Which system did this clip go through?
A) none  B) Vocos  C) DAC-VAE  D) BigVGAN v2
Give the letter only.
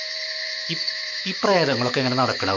C